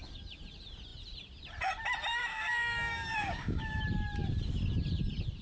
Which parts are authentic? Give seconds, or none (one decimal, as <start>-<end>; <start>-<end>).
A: 0.0-2.3; 3.8-5.4